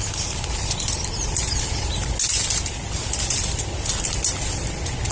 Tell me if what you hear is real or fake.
real